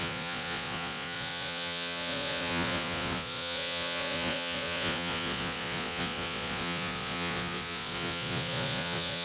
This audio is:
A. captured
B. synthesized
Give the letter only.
B